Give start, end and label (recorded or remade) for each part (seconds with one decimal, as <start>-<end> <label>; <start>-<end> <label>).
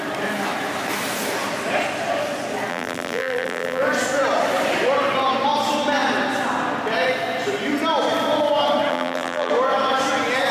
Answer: 0.0-2.7 recorded; 2.7-3.8 remade; 3.8-8.9 recorded; 8.9-9.5 remade; 9.5-10.5 recorded